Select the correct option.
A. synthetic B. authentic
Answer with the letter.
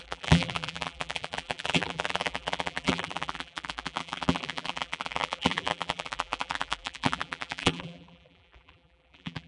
A